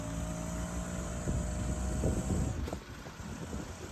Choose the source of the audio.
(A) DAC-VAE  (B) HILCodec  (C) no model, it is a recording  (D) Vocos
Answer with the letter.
C